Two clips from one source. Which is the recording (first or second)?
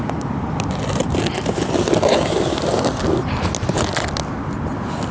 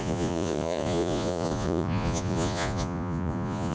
first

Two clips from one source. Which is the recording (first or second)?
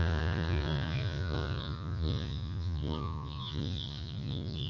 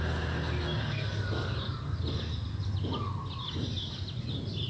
second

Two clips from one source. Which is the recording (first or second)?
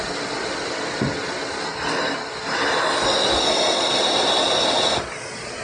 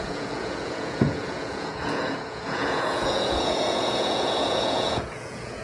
first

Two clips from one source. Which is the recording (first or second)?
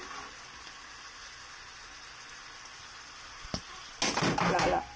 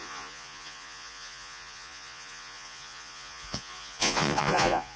first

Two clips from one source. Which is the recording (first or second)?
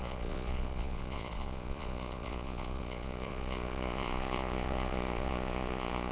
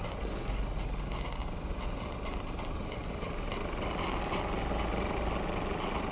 second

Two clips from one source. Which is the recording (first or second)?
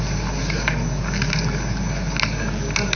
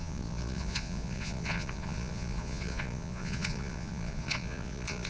first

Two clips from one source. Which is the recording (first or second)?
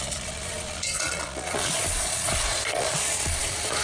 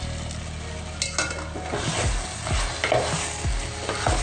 second